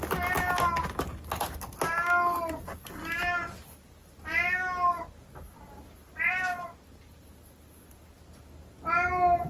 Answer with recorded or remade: recorded